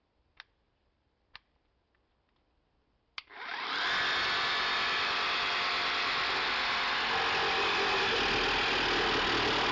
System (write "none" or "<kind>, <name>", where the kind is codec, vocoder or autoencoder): none